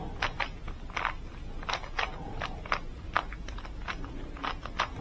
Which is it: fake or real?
real